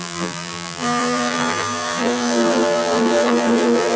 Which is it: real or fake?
fake